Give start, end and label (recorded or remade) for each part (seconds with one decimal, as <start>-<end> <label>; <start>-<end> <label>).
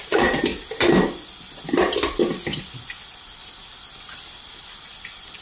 0.0-0.5 remade; 0.5-3.1 recorded; 3.1-5.4 remade